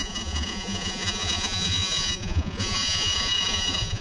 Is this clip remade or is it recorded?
remade